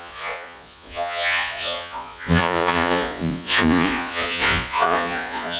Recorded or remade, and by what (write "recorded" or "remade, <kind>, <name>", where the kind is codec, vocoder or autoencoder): remade, vocoder, Vocos